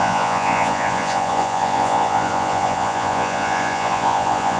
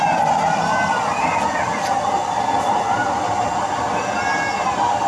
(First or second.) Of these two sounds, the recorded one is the second